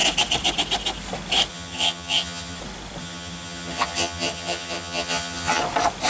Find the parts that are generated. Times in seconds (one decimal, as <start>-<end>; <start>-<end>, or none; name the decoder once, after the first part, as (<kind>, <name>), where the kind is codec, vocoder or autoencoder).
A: 1.5-2.6 (vocoder, HiFi-GAN); 3.0-5.6